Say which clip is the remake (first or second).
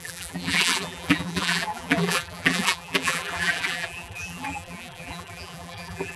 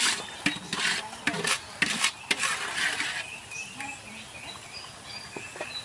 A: first